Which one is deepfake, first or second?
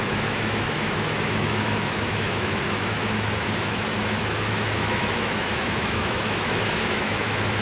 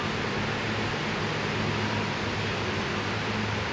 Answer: first